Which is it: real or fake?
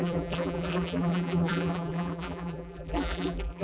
fake